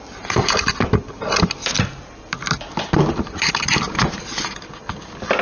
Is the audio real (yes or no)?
yes